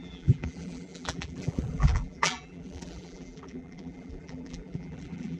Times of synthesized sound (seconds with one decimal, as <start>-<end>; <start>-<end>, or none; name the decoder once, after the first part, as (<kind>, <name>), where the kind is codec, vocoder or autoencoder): 0.0-5.4 (vocoder, BigVGAN v2)